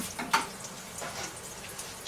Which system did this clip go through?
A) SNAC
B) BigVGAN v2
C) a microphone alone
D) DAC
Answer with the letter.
C